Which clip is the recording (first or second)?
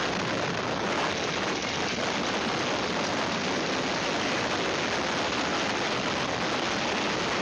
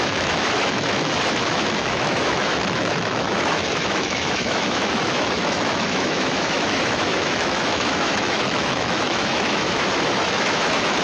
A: first